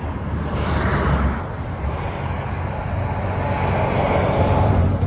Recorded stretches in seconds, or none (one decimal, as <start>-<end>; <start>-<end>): 0.9-1.8; 2.8-4.3